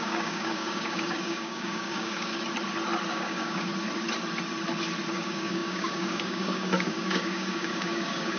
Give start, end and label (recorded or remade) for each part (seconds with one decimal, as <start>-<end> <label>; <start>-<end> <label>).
0.0-2.3 remade; 2.3-3.1 recorded; 3.1-3.7 remade; 3.7-5.1 recorded; 5.1-8.4 remade